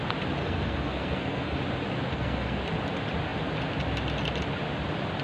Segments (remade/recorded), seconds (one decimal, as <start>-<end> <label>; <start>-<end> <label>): 0.0-0.4 recorded; 0.4-1.6 remade; 1.6-2.1 recorded; 2.1-2.6 remade; 2.6-5.2 recorded